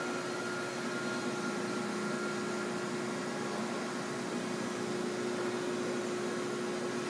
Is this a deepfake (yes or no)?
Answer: no